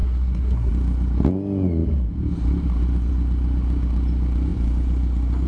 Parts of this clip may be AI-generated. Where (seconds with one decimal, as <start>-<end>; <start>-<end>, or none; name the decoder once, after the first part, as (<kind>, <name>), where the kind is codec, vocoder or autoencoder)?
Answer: 0.0-0.7 (codec, SNAC)